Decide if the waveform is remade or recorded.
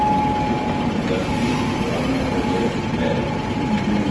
recorded